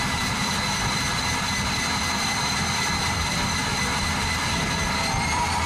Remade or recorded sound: remade